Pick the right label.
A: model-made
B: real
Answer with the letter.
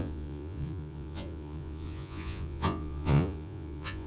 A